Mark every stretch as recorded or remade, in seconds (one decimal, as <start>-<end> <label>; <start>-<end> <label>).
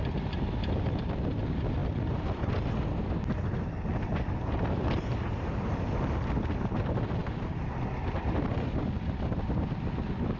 0.0-1.8 recorded; 1.8-2.5 remade; 2.5-7.2 recorded; 7.2-9.6 remade; 9.6-10.4 recorded